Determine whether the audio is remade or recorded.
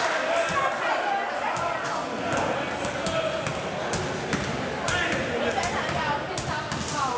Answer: recorded